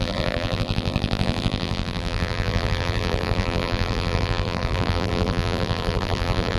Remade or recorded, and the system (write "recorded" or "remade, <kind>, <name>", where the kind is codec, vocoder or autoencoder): remade, vocoder, BigVGAN v2